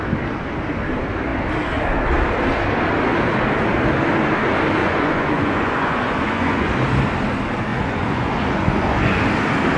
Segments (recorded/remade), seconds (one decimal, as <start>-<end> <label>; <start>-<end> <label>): 0.0-4.8 recorded; 4.8-6.7 remade; 6.7-7.7 recorded; 7.7-9.2 remade; 9.2-9.8 recorded